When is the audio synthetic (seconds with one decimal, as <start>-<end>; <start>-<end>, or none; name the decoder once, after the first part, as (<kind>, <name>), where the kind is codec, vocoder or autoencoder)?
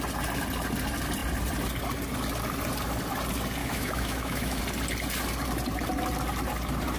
3.6-4.6 (autoencoder, DAC-VAE)